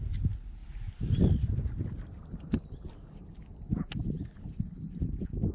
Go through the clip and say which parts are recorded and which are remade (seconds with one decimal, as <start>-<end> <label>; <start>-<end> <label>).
0.0-5.5 recorded